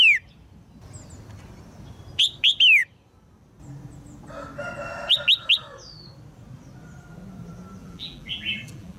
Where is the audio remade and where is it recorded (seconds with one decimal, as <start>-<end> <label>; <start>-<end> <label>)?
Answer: 0.0-7.8 recorded; 7.8-9.0 remade